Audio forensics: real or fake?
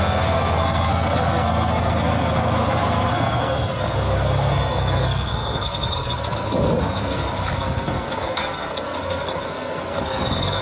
fake